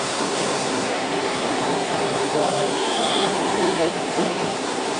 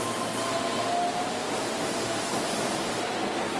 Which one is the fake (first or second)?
first